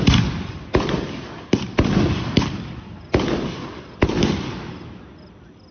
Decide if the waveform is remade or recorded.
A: recorded